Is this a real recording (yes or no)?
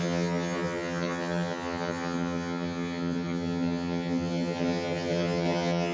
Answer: no